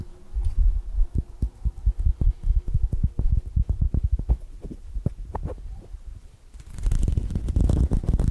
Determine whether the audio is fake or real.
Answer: real